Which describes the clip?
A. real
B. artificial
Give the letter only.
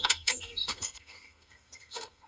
B